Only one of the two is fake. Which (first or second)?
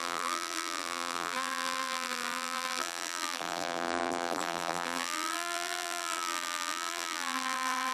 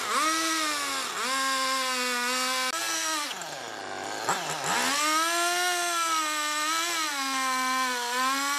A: first